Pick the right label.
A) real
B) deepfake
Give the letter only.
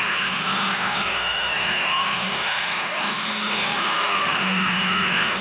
B